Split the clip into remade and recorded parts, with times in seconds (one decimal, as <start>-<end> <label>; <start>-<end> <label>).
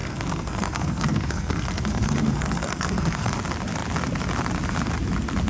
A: 0.0-3.3 remade; 3.3-5.5 recorded